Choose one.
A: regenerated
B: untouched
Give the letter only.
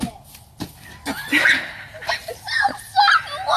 B